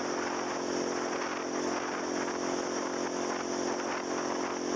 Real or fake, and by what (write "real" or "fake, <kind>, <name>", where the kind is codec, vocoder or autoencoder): real